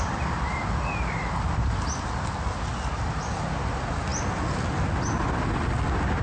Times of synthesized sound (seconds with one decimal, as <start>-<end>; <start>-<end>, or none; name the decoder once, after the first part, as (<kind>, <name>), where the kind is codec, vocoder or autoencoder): none